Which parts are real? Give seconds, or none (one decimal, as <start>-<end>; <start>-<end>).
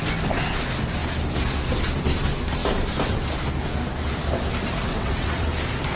0.0-4.9; 5.5-6.0